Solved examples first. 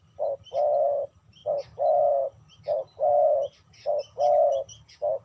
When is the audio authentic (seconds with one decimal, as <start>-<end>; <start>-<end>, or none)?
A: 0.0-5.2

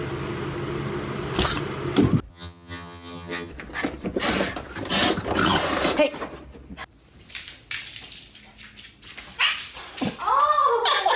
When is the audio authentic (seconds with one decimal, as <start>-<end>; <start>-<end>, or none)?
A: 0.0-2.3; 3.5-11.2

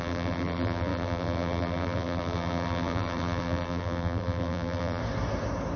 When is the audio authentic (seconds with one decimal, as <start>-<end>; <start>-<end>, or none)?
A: 5.0-5.8

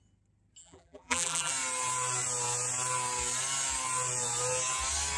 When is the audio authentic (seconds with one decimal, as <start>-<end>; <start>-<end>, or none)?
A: 0.0-0.6; 1.5-5.2

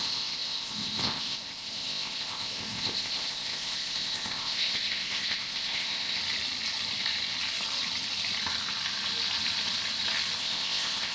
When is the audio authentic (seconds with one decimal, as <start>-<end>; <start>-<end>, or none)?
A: 6.2-10.4